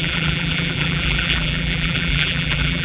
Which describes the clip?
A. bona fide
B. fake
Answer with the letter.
B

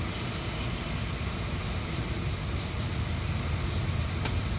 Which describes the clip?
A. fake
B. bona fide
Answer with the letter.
B